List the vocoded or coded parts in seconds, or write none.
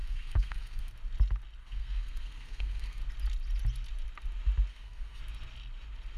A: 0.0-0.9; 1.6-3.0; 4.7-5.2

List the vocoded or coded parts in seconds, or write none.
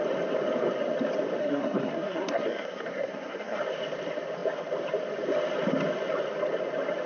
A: 1.4-3.6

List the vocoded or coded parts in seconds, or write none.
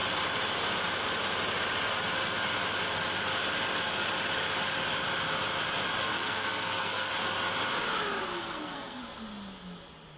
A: 6.1-7.1; 8.3-9.0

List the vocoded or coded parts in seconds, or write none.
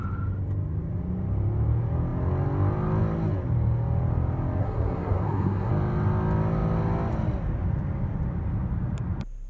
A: 4.6-5.7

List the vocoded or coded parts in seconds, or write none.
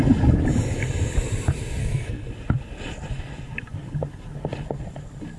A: 1.8-2.3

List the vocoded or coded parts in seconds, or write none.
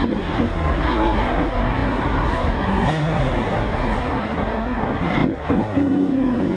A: 0.0-6.6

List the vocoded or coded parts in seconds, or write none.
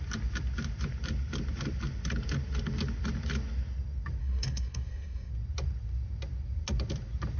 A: 4.2-5.3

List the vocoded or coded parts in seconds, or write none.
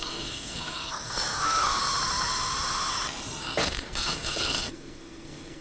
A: 0.0-1.8; 3.6-5.6